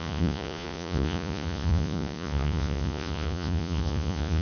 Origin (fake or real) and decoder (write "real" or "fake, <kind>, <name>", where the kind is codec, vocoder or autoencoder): fake, vocoder, Vocos